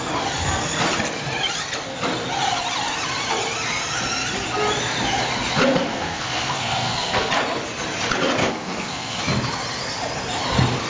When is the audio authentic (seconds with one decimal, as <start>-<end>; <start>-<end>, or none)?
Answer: 0.0-5.9; 7.3-8.4; 9.2-10.9